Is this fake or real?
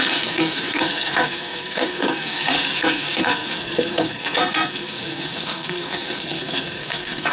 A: fake